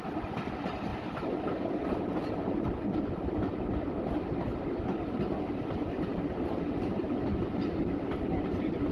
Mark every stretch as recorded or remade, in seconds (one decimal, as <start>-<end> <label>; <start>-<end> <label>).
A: 0.0-8.9 recorded